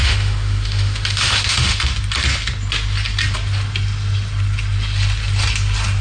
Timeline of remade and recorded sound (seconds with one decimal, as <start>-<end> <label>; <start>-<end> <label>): 0.0-1.8 remade; 1.8-6.0 recorded